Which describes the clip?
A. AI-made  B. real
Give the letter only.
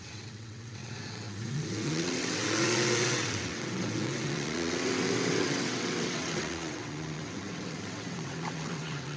A